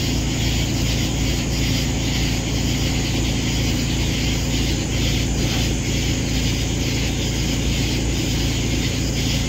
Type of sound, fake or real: real